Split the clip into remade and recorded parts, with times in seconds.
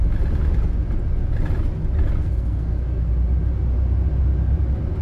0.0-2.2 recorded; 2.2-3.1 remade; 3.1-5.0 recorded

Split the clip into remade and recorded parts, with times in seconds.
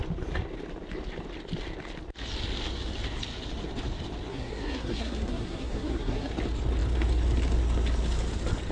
0.0-4.3 recorded; 4.3-6.3 remade; 6.3-8.7 recorded